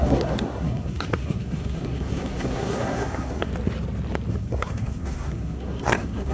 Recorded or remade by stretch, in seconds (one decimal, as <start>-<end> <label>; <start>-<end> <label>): 0.0-3.5 remade; 3.5-4.3 recorded; 4.3-6.3 remade